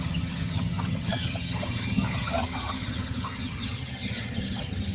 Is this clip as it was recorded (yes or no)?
no